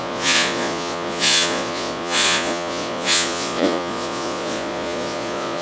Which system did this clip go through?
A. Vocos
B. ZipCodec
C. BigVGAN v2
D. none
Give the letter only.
A